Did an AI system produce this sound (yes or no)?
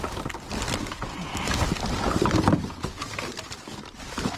no